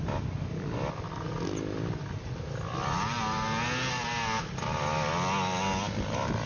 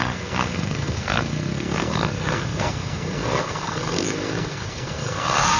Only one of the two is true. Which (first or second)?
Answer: first